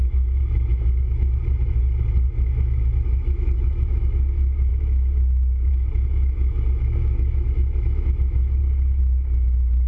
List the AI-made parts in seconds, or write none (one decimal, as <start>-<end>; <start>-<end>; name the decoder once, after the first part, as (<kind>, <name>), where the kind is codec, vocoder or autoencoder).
0.0-1.4 (autoencoder, DAC-VAE); 2.3-8.6; 9.3-9.9